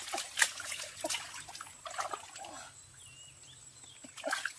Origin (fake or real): real